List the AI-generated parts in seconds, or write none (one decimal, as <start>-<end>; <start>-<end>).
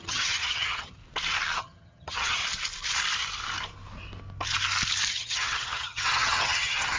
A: 0.0-1.0; 1.6-2.4; 5.1-7.0